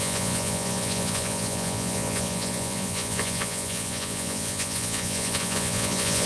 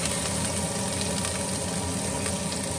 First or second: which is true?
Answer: second